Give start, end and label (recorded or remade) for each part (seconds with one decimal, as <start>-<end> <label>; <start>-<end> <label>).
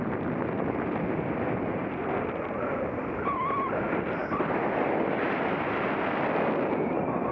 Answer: 0.0-7.3 recorded